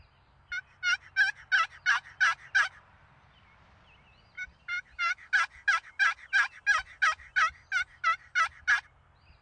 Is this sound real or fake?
real